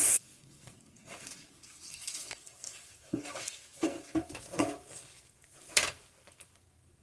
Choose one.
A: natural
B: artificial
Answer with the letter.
B